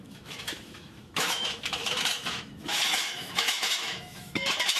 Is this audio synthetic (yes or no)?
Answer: yes